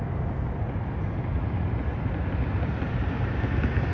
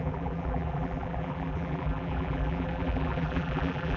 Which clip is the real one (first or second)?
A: first